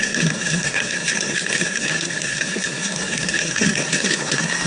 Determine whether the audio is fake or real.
fake